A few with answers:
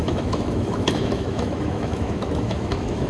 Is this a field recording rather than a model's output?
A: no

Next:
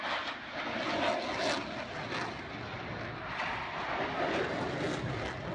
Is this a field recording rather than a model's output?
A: yes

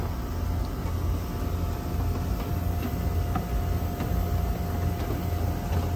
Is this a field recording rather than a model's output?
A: yes